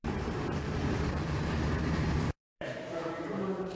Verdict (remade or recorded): remade